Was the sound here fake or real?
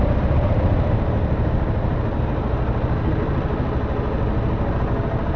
real